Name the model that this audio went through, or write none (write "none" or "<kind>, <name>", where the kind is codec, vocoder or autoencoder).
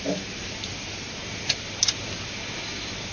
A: none